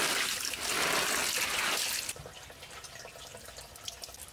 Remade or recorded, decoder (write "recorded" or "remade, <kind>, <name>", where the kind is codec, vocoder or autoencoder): recorded